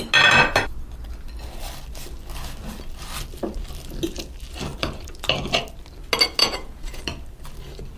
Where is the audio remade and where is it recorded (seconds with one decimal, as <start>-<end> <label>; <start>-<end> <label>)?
0.0-6.4 recorded; 6.4-7.0 remade; 7.0-8.0 recorded